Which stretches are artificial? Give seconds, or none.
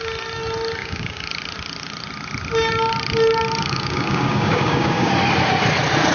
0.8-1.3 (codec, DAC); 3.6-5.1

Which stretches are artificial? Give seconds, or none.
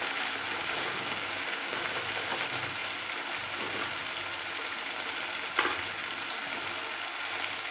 0.6-1.8 (codec, DAC)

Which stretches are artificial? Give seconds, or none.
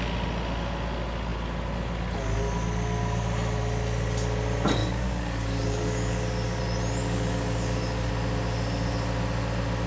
4.8-6.6 (codec, DAC); 7.0-8.1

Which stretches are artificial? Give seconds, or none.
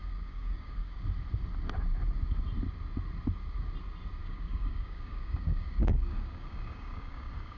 0.0-1.0 (codec, DAC); 4.2-7.6